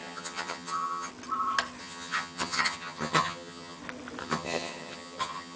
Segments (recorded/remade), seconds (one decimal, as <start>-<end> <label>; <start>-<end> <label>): 0.0-1.1 remade; 1.1-1.8 recorded; 1.8-3.8 remade; 3.8-4.2 recorded; 4.2-5.6 remade